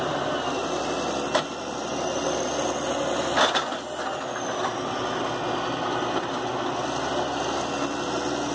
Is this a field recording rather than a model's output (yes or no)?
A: yes